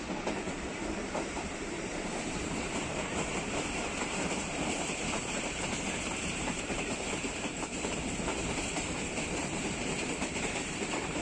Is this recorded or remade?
remade